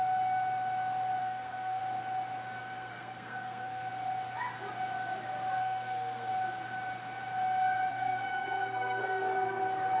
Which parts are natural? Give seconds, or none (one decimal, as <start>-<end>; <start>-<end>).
0.0-1.2; 1.8-2.6; 3.9-5.6; 6.3-7.9; 9.6-10.0